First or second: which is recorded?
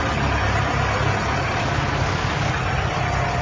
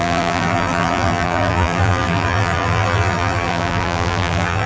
first